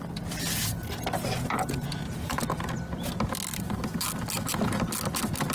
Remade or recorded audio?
recorded